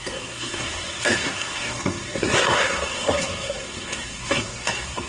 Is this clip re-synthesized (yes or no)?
yes